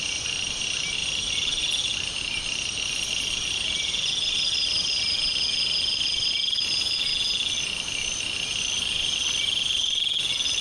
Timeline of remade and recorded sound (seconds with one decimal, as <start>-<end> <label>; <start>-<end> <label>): 0.0-10.6 recorded